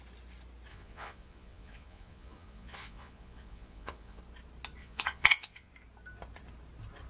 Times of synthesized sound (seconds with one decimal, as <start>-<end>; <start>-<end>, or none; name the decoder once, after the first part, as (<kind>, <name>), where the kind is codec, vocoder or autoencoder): 0.7-4.2 (vocoder, Vocos); 4.8-5.7